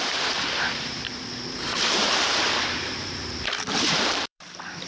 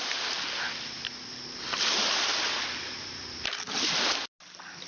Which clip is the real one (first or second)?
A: second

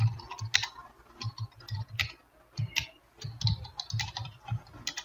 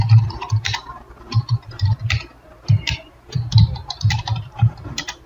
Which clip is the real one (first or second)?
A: first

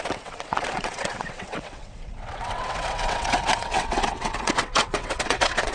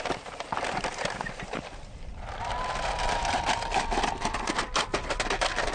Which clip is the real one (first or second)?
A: second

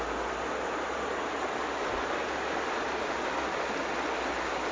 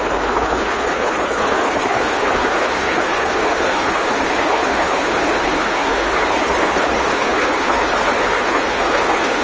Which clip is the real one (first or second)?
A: first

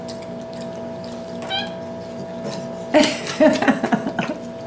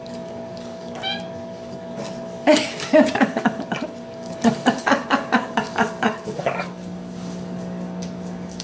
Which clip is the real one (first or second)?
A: first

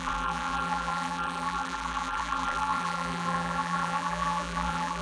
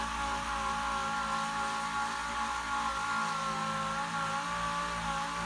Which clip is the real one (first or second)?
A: second